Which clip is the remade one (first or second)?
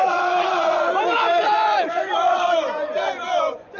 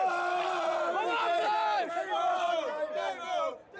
first